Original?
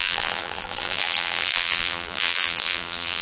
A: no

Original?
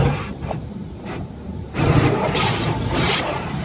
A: no